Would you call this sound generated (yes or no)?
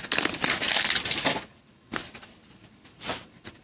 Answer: no